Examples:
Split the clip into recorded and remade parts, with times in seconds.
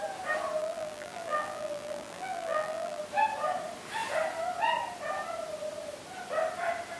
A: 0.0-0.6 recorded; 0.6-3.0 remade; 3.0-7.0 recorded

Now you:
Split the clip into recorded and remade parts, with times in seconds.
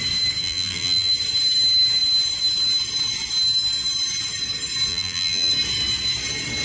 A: 0.0-0.4 recorded; 0.4-1.1 remade; 1.1-4.9 recorded; 4.9-5.5 remade; 5.5-6.6 recorded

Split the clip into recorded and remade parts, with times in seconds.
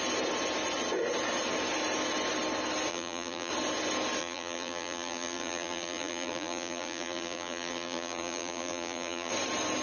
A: 0.0-2.9 recorded; 2.9-3.5 remade; 3.5-4.2 recorded; 4.2-9.3 remade; 9.3-9.8 recorded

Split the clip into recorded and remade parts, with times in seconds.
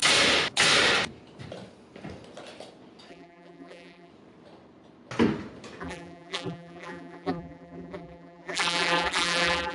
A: 0.0-3.1 recorded; 3.1-4.1 remade; 4.1-5.8 recorded; 5.8-9.7 remade